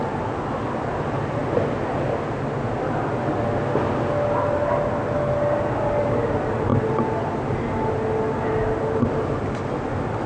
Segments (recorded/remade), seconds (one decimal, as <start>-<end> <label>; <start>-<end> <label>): 0.0-10.3 recorded